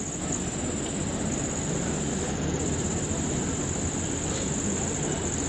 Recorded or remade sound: recorded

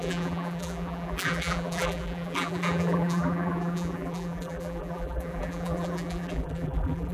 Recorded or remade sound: remade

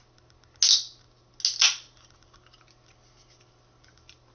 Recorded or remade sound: recorded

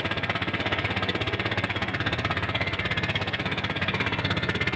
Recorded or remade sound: remade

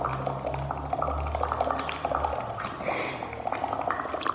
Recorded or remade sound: recorded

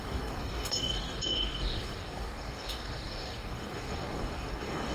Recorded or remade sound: remade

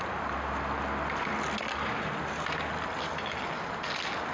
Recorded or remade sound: recorded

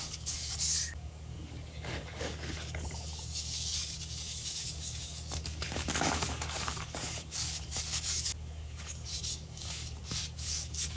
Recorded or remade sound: remade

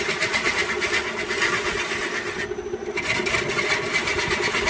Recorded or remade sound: recorded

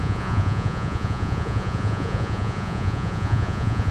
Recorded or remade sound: remade